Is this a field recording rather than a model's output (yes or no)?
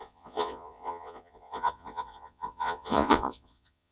no